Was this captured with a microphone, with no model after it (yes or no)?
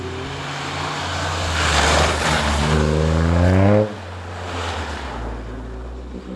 yes